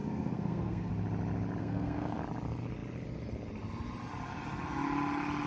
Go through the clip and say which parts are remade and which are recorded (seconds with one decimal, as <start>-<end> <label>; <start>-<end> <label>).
0.0-0.9 remade; 0.9-1.6 recorded; 1.6-2.2 remade; 2.2-5.5 recorded